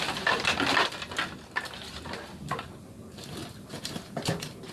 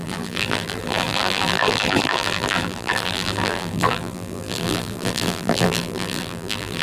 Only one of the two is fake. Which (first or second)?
second